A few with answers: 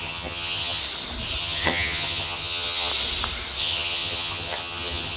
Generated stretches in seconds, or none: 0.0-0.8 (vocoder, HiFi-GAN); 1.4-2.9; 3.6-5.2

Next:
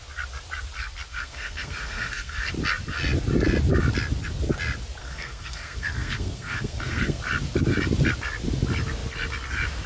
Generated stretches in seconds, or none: 1.1-2.5 (codec, SNAC); 5.0-7.2

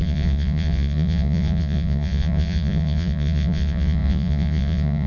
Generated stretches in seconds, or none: 0.0-5.1 (vocoder, Vocos)

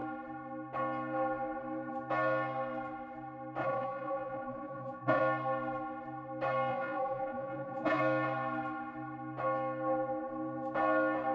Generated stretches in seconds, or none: 3.6-5.2 (vocoder, Vocos); 6.7-8.0